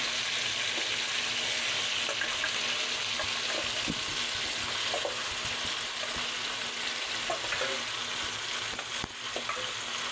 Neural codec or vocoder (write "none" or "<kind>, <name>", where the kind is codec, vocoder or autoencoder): none